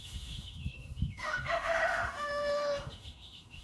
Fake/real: fake